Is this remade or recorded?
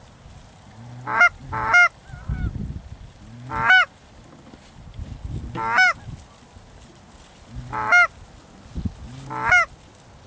recorded